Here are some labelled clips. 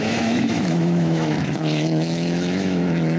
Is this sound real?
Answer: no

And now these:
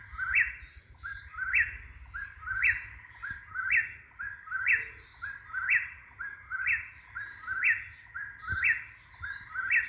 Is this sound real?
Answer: yes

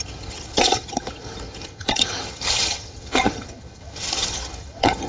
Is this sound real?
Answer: no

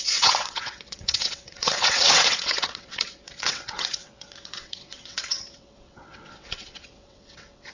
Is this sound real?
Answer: no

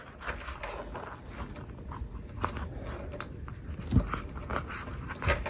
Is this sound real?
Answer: yes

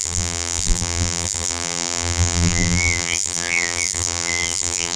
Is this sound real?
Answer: no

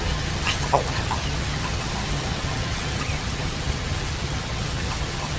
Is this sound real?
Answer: no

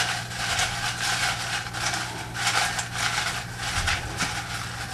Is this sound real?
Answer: yes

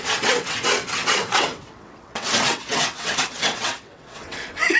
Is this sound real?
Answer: no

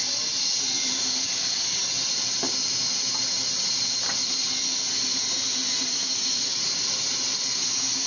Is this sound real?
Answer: yes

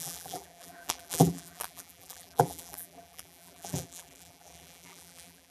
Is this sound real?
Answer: no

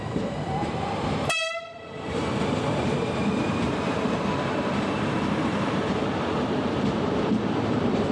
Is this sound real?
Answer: no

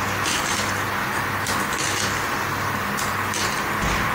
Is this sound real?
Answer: yes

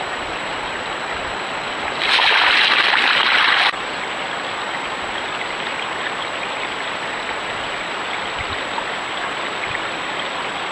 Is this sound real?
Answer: yes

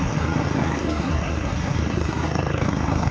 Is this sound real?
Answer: no